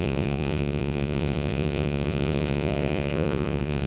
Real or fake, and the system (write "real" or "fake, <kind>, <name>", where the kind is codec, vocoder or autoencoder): fake, vocoder, Vocos